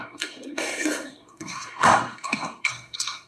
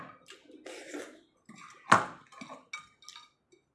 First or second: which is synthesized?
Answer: first